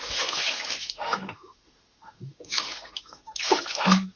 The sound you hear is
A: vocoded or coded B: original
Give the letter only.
A